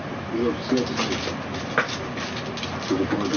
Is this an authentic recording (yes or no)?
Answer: yes